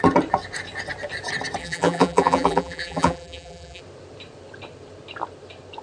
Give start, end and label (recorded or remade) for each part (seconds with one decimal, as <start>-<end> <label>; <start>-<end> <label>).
0.0-1.6 recorded; 1.6-3.8 remade; 3.8-5.8 recorded

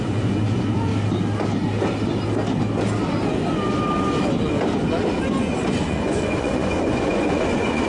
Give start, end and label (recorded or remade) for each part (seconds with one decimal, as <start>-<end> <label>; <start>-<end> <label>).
0.0-0.9 remade; 0.9-5.4 recorded; 5.4-7.9 remade

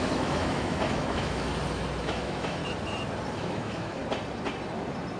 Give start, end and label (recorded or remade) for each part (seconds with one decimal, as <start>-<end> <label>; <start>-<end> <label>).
0.0-1.5 remade; 1.5-2.0 recorded; 2.0-2.6 remade; 2.6-3.4 recorded; 3.4-4.0 remade; 4.0-5.2 recorded

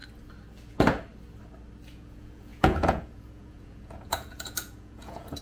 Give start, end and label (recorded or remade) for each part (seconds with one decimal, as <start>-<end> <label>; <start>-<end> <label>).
0.0-0.7 recorded; 0.7-1.1 remade; 1.1-1.9 recorded; 1.9-5.4 remade

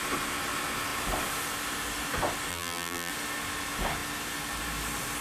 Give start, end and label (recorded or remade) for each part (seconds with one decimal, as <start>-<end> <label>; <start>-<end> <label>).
0.0-2.5 recorded; 2.5-3.1 remade; 3.1-5.2 recorded

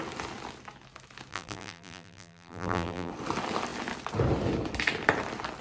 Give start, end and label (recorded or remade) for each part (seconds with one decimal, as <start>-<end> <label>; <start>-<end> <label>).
0.0-1.3 recorded; 1.3-3.1 remade; 3.1-5.6 recorded

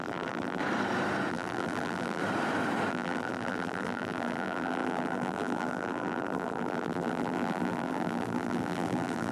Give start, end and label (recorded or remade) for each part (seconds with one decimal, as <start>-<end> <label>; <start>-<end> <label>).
0.0-0.6 remade; 0.6-1.3 recorded; 1.3-2.2 remade; 2.2-2.9 recorded; 2.9-9.3 remade

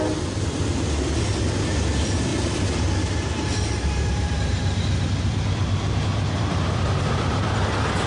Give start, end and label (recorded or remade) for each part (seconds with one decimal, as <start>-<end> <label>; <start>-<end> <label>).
0.0-8.1 recorded